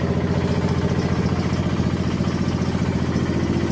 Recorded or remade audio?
recorded